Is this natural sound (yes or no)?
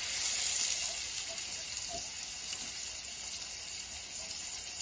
yes